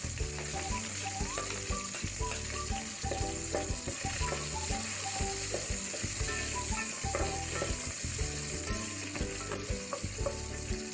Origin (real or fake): real